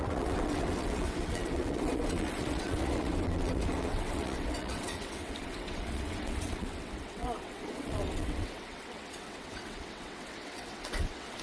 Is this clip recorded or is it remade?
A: remade